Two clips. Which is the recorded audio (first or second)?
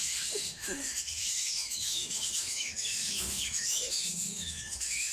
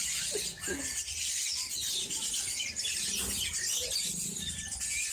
second